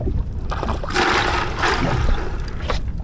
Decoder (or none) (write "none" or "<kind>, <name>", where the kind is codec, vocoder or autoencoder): none